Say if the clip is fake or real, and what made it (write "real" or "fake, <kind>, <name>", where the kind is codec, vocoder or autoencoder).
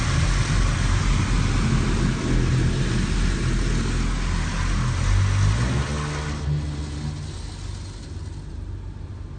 real